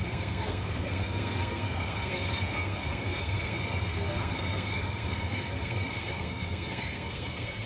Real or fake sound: fake